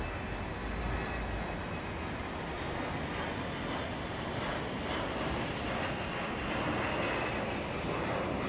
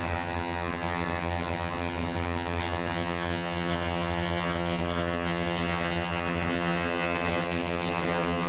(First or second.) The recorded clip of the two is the first